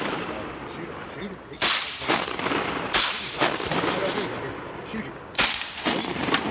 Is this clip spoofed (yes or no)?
yes